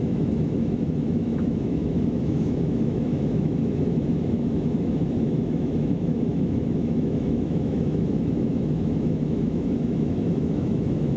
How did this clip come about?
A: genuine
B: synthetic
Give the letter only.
B